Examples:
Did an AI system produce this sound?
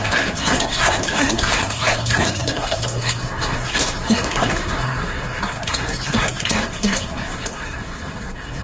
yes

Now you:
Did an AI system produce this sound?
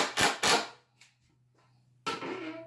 no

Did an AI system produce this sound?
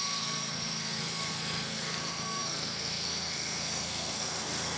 yes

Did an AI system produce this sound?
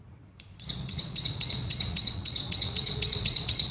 yes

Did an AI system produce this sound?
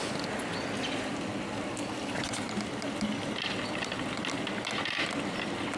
no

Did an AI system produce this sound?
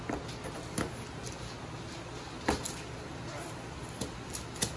no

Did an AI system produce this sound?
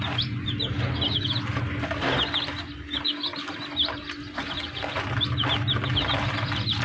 no